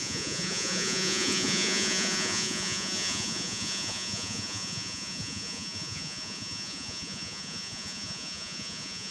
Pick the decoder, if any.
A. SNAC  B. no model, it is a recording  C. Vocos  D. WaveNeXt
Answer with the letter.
C